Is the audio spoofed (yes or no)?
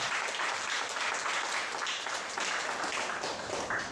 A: no